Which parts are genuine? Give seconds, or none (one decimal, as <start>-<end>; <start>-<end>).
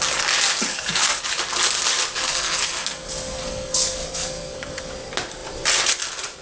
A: 0.0-0.7; 1.2-2.2; 4.9-6.4